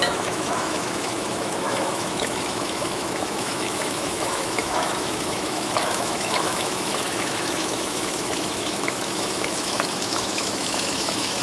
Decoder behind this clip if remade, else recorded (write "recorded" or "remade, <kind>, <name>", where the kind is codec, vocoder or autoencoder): remade, autoencoder, DAC-VAE